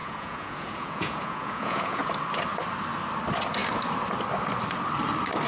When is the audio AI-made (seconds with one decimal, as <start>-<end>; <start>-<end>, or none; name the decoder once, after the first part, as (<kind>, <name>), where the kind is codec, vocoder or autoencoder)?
0.0-2.1 (vocoder, Vocos)